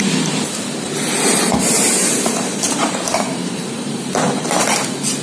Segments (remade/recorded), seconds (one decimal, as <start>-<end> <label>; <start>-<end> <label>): 0.0-1.5 recorded; 1.5-4.6 remade; 4.6-5.2 recorded